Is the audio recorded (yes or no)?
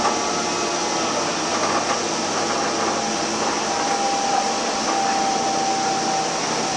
yes